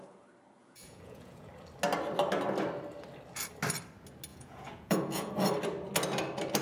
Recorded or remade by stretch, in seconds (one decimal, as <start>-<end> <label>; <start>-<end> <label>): 0.0-0.6 recorded; 0.6-1.5 remade; 1.5-4.3 recorded; 4.3-5.3 remade; 5.3-6.6 recorded